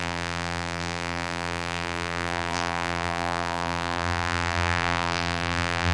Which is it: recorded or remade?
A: remade